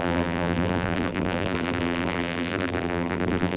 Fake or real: fake